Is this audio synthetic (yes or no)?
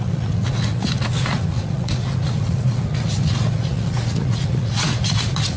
yes